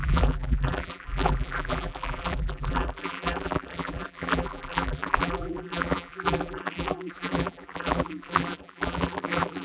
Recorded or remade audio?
remade